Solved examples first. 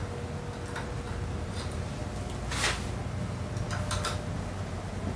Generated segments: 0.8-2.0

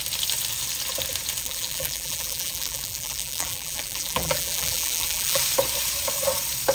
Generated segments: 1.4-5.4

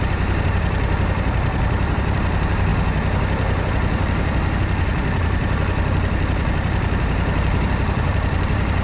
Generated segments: 0.0-2.7; 3.7-8.8

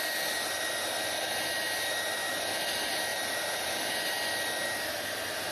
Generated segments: 3.1-3.9